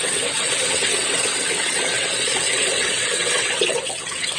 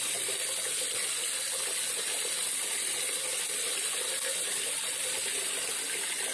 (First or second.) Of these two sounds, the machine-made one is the first